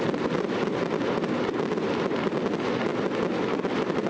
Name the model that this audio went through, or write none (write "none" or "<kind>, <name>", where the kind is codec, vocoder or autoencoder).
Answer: none